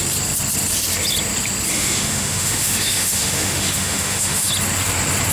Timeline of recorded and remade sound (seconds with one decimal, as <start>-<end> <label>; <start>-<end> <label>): 0.0-1.7 recorded; 1.7-4.5 remade; 4.5-5.3 recorded